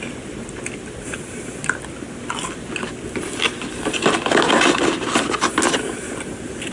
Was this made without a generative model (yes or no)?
yes